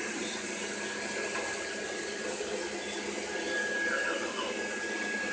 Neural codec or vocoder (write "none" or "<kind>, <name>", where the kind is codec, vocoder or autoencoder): none